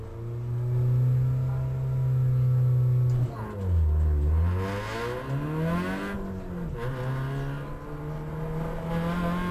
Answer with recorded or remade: recorded